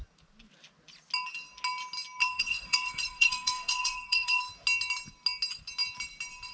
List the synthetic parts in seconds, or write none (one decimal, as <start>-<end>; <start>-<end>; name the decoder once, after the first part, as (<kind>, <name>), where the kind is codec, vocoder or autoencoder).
2.2-4.4 (codec, SNAC)